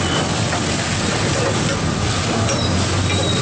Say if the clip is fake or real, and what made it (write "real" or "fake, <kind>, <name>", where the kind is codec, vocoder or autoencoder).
real